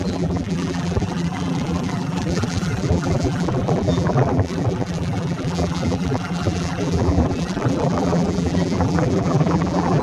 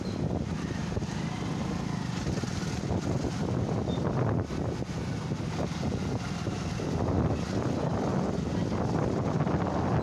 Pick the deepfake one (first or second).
first